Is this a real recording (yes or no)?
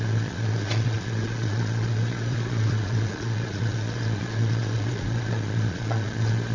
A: no